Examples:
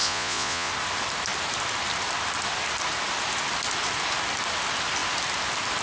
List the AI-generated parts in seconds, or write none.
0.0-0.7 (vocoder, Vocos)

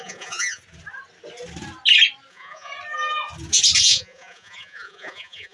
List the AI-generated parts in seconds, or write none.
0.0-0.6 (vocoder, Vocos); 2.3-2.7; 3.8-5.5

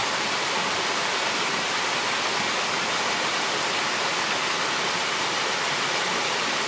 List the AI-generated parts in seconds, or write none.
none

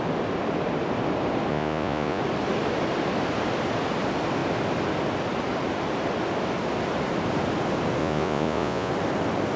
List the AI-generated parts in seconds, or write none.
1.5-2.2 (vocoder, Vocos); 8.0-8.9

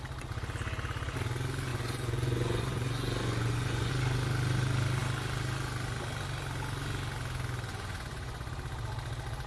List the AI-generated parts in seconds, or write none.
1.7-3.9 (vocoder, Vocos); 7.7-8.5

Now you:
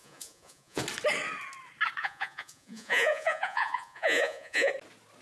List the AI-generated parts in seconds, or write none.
0.0-0.8 (vocoder, Vocos); 2.0-4.7

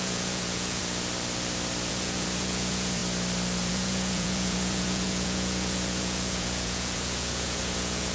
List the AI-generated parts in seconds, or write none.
0.0-0.8 (vocoder, Vocos); 1.9-3.0; 3.7-8.1

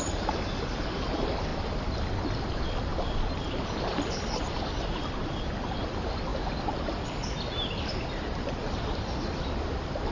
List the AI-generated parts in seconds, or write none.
none